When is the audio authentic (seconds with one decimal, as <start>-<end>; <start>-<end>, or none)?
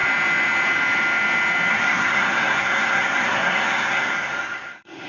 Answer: 0.0-1.7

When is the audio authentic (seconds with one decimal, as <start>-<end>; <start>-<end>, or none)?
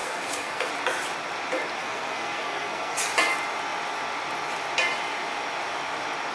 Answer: 0.7-1.8; 3.0-6.3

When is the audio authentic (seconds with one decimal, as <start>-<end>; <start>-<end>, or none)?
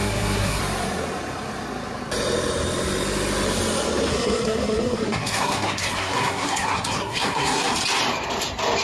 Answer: 0.6-4.1; 7.7-8.8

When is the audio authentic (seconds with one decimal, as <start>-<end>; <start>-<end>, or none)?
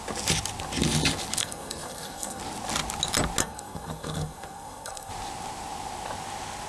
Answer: 0.0-1.4; 2.4-3.4; 5.1-6.7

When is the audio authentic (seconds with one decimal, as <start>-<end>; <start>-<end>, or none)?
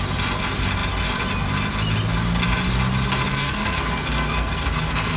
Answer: 0.0-3.3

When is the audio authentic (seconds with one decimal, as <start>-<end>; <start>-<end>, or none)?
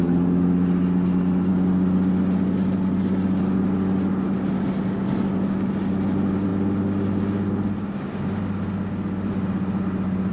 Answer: 0.0-10.3